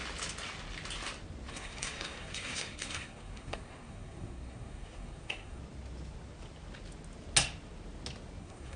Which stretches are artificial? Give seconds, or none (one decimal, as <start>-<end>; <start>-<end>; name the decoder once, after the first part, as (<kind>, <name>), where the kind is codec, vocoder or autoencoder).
1.5-5.6 (codec, SNAC); 8.4-8.8